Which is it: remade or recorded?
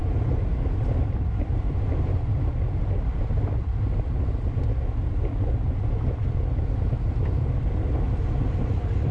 recorded